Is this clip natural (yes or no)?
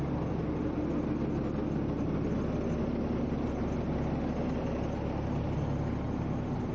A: yes